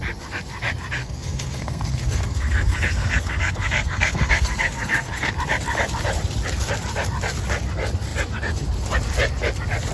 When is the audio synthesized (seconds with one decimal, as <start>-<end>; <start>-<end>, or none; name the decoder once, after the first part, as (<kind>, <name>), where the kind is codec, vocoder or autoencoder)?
1.0-5.3 (codec, SNAC)